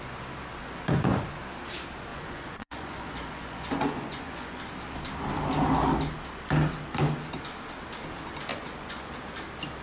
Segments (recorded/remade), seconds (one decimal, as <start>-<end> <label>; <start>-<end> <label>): 0.0-0.6 recorded; 0.6-1.2 remade; 1.2-2.1 recorded; 2.1-4.6 remade; 4.6-8.5 recorded; 8.5-9.2 remade; 9.2-9.8 recorded